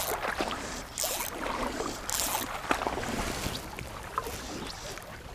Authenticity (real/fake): real